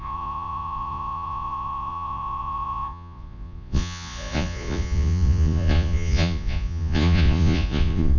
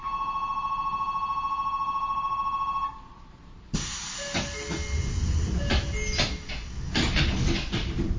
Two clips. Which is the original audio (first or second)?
second